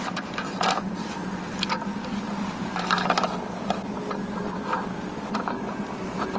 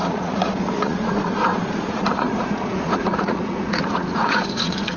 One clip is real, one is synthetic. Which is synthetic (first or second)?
second